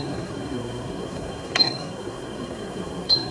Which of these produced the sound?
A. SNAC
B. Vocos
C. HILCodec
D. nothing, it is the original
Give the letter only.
A